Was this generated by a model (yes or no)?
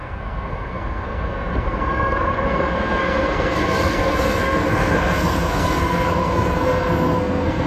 yes